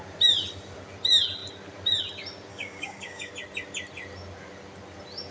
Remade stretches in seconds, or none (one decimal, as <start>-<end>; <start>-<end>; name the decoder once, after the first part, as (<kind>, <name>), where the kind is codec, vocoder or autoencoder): 2.5-3.3 (codec, DAC)